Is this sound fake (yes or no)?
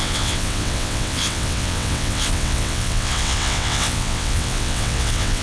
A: yes